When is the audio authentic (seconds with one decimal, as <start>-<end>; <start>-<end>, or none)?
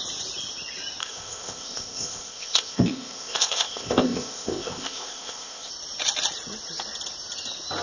0.0-1.0; 5.7-7.8